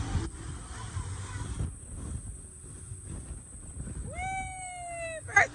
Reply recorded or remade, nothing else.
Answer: recorded